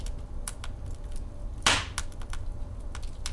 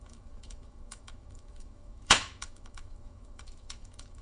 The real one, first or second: first